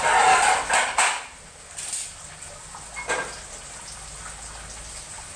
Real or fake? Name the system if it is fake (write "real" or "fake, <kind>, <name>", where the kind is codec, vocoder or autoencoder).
real